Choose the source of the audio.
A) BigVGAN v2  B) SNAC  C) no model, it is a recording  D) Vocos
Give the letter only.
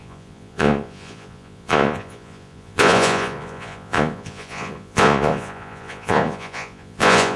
D